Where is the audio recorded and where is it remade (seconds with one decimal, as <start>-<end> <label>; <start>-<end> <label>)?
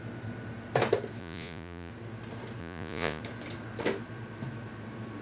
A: 0.0-1.2 recorded; 1.2-1.9 remade; 1.9-2.6 recorded; 2.6-3.2 remade; 3.2-5.2 recorded